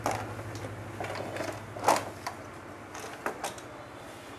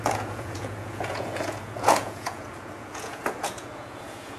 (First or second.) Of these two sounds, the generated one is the second